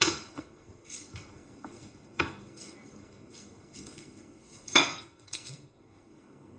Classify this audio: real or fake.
fake